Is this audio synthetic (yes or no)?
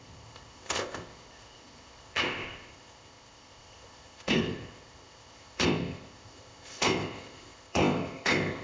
yes